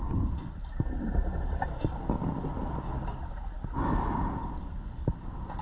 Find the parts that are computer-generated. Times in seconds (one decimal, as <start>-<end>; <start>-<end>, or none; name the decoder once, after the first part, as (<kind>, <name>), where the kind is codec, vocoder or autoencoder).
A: none